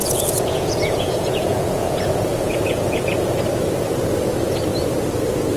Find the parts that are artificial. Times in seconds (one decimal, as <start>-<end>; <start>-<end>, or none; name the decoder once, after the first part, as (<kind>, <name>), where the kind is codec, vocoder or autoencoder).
0.0-3.0 (vocoder, Vocos)